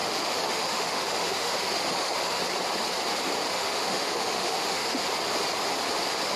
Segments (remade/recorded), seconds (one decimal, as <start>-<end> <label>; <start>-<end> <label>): 0.0-2.4 remade; 2.4-3.4 recorded; 3.4-5.1 remade; 5.1-6.4 recorded